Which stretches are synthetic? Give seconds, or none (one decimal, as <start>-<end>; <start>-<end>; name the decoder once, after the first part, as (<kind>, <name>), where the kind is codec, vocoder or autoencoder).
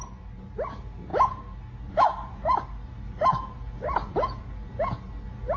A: none